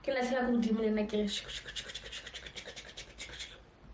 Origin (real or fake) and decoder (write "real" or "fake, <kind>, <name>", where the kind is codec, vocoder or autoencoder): real